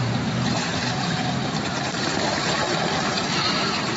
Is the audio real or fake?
fake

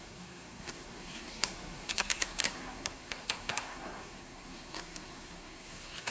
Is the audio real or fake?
fake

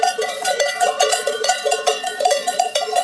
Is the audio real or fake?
fake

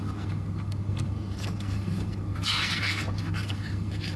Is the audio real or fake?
fake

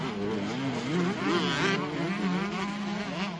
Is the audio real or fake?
real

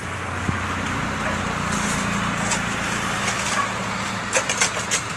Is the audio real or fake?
real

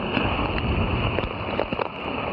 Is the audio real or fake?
real